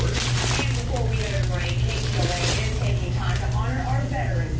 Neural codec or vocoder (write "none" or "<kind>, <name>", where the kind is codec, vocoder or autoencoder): none